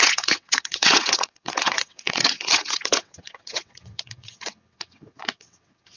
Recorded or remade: remade